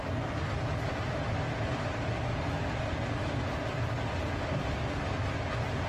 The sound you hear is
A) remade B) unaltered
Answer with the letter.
B